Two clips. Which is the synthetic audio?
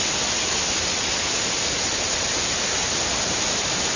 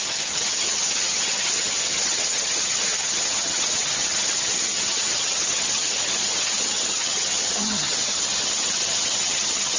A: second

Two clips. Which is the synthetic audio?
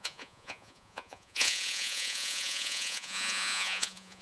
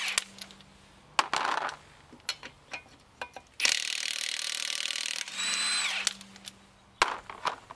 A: first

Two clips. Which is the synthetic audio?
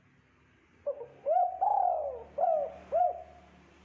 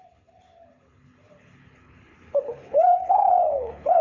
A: second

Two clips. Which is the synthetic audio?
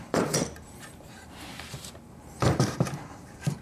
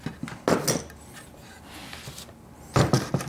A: first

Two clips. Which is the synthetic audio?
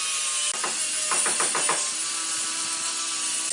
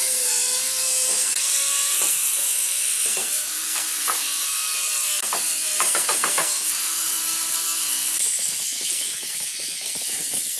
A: second